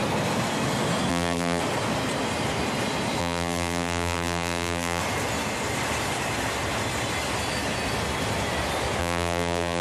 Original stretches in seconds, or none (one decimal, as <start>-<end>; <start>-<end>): 0.0-1.1; 1.6-3.2; 5.0-9.0